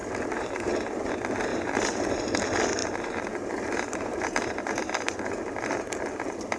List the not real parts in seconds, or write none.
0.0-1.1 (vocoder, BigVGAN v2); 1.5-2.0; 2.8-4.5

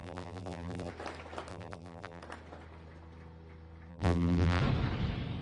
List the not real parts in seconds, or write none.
0.0-0.9 (vocoder, BigVGAN v2); 1.5-2.2; 3.9-4.6

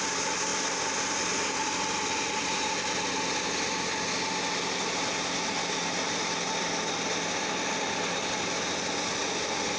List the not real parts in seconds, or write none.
none

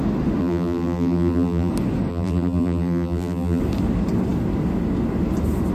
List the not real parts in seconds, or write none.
0.4-1.7 (vocoder, BigVGAN v2); 2.1-3.6